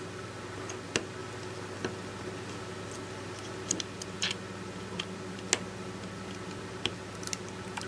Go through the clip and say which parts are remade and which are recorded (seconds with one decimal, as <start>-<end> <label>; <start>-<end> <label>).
0.0-7.9 recorded